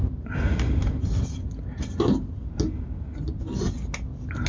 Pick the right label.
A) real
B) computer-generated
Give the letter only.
A